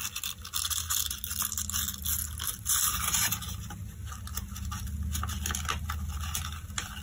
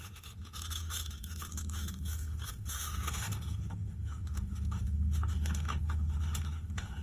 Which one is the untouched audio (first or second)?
first